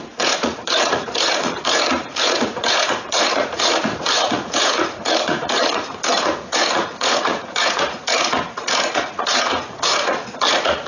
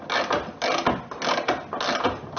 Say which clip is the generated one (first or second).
first